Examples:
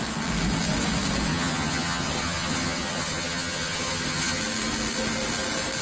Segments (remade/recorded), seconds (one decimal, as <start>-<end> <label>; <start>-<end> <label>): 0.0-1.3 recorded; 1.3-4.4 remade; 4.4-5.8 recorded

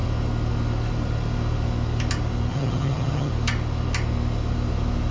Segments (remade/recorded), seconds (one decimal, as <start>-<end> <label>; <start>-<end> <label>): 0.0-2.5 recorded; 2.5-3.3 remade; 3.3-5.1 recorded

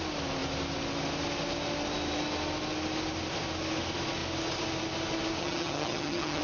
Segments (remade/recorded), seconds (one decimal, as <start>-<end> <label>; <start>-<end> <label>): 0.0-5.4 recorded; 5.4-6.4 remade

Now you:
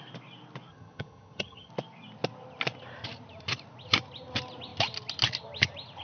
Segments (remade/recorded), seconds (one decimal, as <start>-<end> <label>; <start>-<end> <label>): 0.0-0.7 recorded; 0.7-1.7 remade; 1.7-6.0 recorded

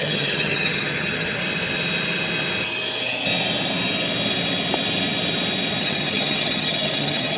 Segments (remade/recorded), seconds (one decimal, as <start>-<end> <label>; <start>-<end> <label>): 0.0-1.4 remade; 1.4-5.8 recorded; 5.8-7.4 remade

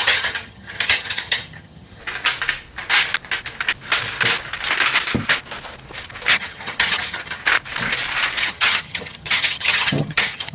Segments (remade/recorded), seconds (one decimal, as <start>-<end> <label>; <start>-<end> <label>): 0.0-2.0 remade; 2.0-6.3 recorded; 6.3-7.4 remade; 7.4-8.4 recorded; 8.4-10.5 remade

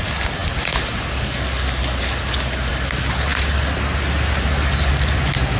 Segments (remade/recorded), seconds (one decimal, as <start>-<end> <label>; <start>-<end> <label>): 0.0-5.6 recorded